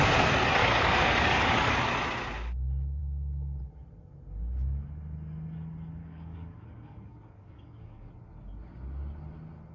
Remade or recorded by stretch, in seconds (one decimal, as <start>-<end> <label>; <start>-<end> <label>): 0.0-0.6 recorded; 0.6-1.8 remade; 1.8-6.0 recorded; 6.0-8.1 remade; 8.1-9.7 recorded